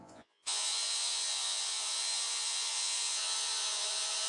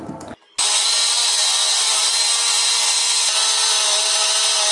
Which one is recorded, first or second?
second